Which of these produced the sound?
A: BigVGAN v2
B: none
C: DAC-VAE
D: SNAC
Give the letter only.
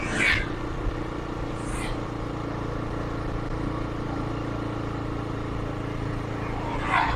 B